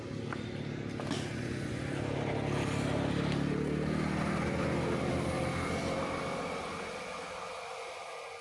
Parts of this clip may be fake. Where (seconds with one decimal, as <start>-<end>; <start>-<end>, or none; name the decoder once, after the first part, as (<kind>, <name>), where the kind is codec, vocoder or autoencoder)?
1.3-1.8 (vocoder, Vocos)